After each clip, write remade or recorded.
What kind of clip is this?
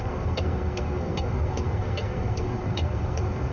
remade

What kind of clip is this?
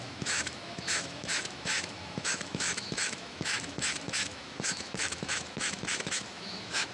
remade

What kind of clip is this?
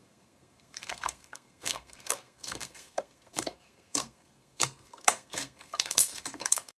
remade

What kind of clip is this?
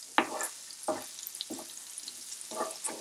recorded